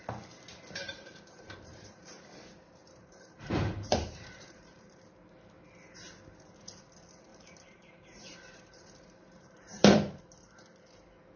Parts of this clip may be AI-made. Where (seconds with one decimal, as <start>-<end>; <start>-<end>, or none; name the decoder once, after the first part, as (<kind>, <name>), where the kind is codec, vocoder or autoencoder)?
0.8-2.1 (vocoder, BigVGAN v2); 3.0-5.0; 7.3-10.2